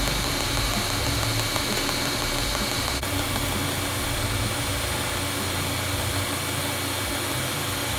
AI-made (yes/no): no